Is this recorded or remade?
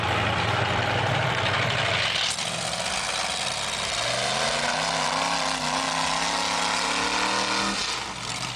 recorded